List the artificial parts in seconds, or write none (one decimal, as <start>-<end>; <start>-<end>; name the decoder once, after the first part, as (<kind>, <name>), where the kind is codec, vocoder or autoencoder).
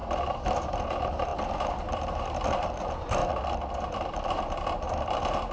0.8-3.2 (vocoder, BigVGAN v2); 4.3-5.5